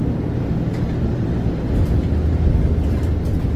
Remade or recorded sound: recorded